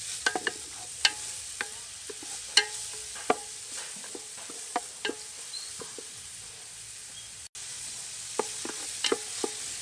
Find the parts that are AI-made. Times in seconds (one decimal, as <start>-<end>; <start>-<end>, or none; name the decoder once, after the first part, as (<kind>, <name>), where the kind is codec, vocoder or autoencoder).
7.6-8.2 (vocoder, Vocos)